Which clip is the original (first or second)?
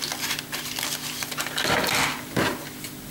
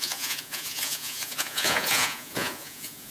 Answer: first